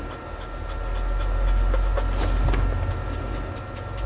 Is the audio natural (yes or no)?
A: yes